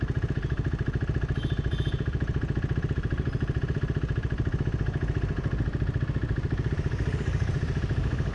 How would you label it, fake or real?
real